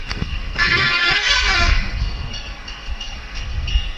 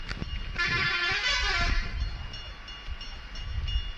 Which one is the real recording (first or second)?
second